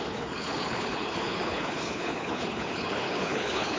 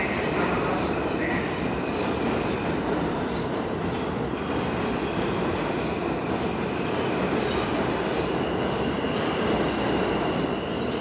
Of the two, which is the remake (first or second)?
first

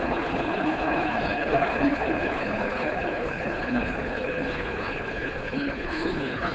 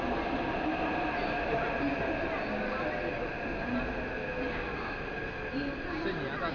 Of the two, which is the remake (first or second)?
first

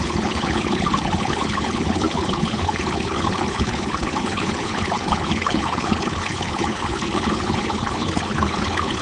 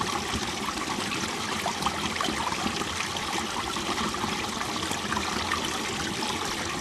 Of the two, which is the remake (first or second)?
first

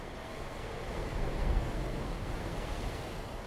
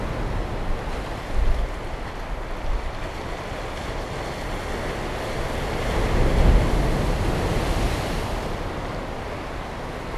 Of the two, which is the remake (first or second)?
first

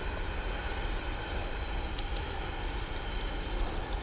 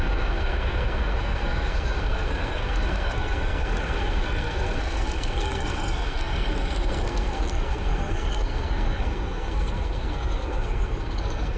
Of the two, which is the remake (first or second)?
second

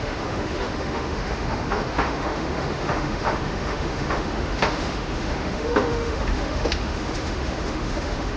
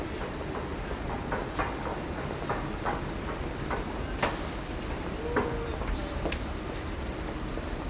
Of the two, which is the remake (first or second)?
first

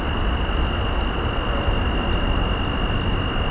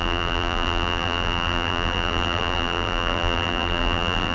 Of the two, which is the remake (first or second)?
second